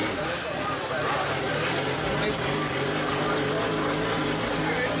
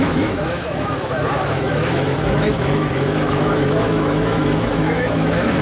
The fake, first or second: second